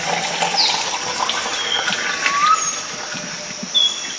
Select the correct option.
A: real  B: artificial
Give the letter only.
A